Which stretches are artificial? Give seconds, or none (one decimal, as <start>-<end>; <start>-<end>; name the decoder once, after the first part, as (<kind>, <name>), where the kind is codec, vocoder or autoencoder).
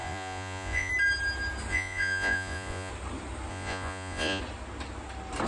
0.0-0.9 (vocoder, Vocos); 1.7-2.9; 3.5-4.4